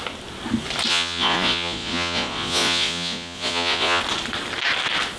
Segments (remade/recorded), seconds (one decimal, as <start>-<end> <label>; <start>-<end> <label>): 0.0-0.9 recorded; 0.9-4.0 remade; 4.0-5.2 recorded